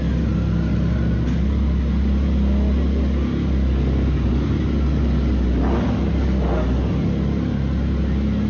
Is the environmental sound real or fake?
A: real